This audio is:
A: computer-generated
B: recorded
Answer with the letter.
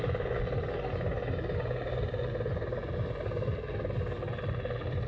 B